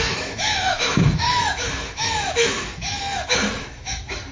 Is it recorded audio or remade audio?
remade